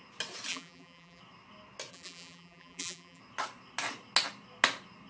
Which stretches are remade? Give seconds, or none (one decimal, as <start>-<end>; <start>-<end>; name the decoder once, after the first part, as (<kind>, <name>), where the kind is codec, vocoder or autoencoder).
0.5-1.2 (vocoder, BigVGAN v2); 1.9-3.2